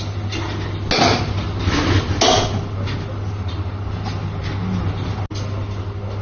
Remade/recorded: recorded